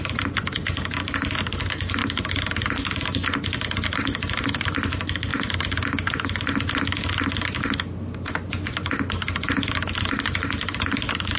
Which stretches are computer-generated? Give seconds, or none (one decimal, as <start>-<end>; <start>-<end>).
none